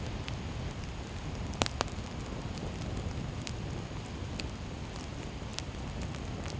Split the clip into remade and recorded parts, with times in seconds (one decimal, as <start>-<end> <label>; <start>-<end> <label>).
0.0-5.5 recorded; 5.5-6.6 remade